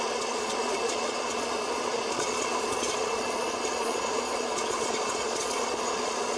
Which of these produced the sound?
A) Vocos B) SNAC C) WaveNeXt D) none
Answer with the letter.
A